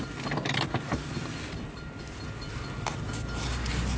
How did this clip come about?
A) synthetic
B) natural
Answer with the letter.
B